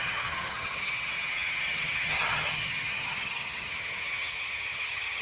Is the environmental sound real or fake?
fake